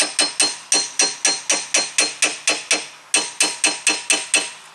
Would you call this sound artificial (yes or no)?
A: no